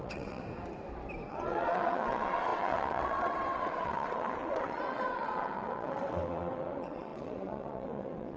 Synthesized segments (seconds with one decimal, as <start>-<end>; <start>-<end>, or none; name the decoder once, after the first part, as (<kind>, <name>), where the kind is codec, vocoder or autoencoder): 0.0-0.4 (vocoder, WaveNeXt); 1.3-8.4